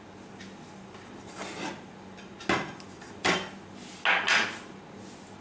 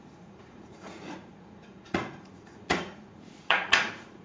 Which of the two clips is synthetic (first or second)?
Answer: second